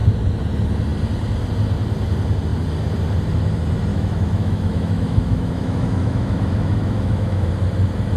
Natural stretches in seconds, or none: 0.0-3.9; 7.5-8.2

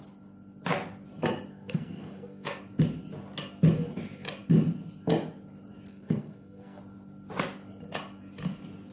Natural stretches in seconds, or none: 0.0-1.5; 2.6-5.9; 6.8-8.9

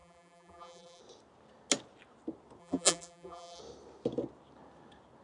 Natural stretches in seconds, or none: 1.0-2.6; 3.6-5.2

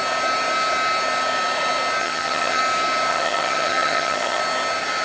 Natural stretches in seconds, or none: 0.0-2.0; 2.6-3.1; 4.4-5.0

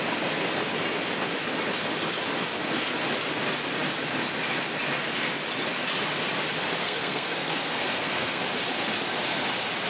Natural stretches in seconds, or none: 0.0-6.8; 8.4-9.9